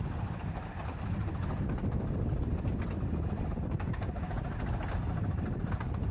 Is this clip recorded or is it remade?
remade